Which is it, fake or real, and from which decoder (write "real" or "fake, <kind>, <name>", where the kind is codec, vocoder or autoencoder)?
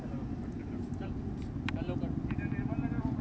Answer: real